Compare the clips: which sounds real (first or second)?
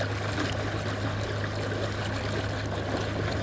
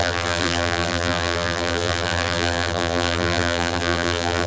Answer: first